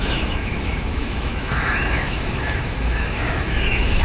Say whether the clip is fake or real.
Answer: fake